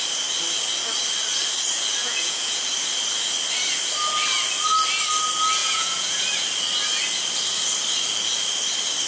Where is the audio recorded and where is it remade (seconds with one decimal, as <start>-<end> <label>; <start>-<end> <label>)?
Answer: 0.0-2.0 recorded; 2.0-2.6 remade; 2.6-5.6 recorded; 5.6-6.2 remade; 6.2-9.1 recorded